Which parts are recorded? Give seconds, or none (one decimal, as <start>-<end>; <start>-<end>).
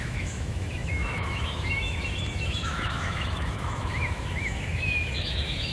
none